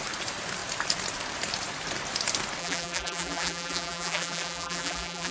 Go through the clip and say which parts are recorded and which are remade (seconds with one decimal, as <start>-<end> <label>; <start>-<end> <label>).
0.0-2.6 recorded; 2.6-5.3 remade